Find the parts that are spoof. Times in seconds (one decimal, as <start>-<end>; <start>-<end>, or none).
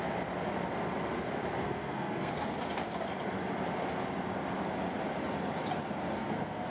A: 1.6-2.3; 6.2-6.7